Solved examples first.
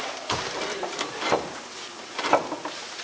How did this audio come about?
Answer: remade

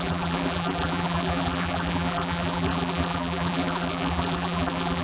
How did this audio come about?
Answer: remade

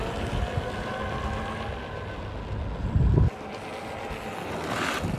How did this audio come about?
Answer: recorded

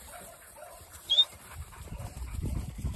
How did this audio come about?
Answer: remade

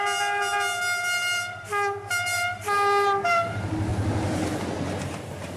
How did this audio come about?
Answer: recorded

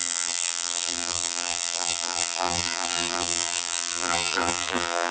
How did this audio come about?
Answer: remade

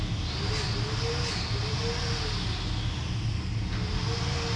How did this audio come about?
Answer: recorded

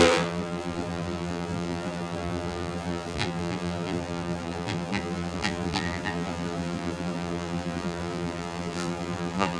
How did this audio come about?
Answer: remade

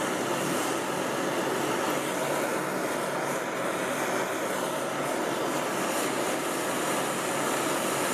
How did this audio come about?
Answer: recorded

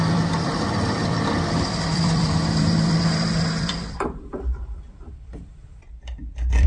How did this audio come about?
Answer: remade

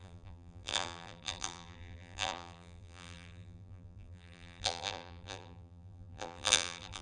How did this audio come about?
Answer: remade